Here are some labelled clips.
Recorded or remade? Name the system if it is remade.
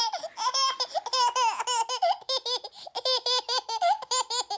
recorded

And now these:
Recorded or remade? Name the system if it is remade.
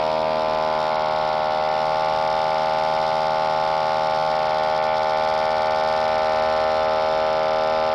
recorded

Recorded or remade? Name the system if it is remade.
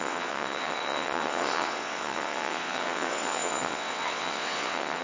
remade, vocoder, WaveNeXt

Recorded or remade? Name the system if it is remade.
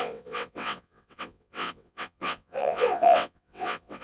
remade, vocoder, WaveNeXt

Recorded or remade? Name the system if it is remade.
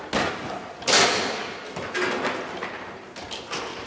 recorded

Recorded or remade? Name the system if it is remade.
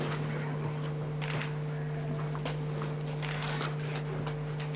recorded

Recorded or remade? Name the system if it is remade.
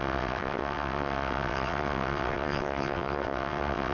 remade, vocoder, WaveNeXt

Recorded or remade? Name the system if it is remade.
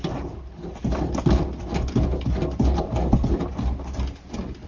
recorded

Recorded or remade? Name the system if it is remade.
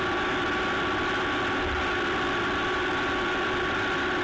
recorded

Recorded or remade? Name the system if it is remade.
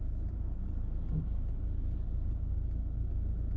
recorded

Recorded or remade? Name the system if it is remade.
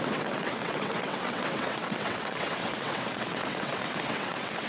remade, vocoder, WaveNeXt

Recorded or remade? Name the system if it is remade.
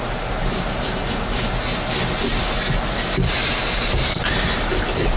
recorded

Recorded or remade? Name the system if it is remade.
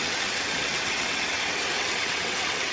remade, vocoder, WaveNeXt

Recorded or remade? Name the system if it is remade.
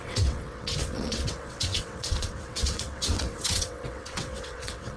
remade, vocoder, WaveNeXt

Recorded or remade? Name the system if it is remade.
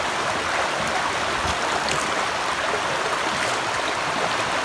recorded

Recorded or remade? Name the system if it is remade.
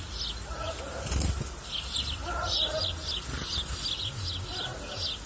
recorded